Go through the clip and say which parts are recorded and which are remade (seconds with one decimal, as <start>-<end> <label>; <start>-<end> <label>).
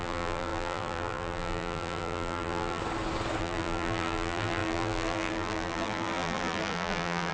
0.0-2.8 remade; 2.8-3.4 recorded; 3.4-7.3 remade